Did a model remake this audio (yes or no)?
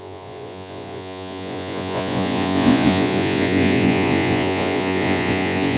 yes